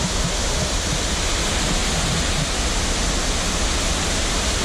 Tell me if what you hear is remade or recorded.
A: recorded